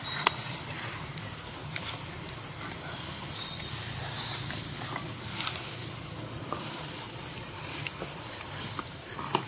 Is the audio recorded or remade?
remade